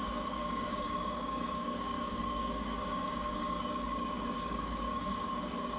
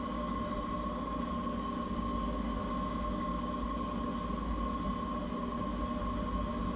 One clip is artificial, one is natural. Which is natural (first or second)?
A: second